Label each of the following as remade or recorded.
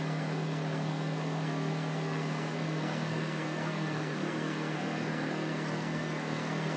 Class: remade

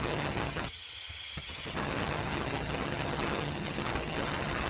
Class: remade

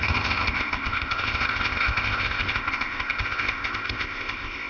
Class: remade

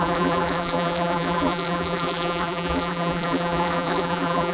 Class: remade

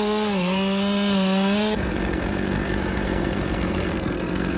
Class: remade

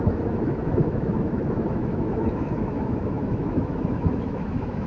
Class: remade